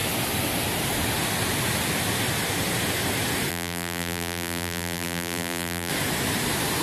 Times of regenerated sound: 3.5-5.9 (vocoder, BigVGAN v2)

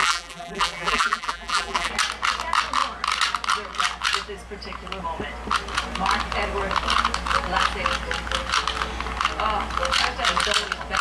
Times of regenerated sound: 0.0-1.9 (vocoder, BigVGAN v2)

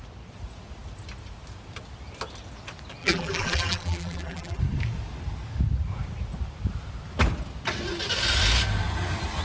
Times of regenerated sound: 3.0-4.6 (vocoder, BigVGAN v2)

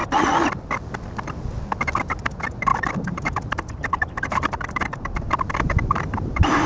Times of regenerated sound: 2.1-6.7 (vocoder, BigVGAN v2)

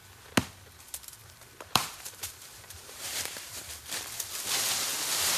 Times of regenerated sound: 1.2-3.7 (vocoder, BigVGAN v2)